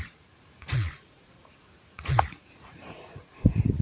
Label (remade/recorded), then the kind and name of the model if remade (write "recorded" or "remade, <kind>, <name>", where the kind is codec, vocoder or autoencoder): remade, vocoder, Vocos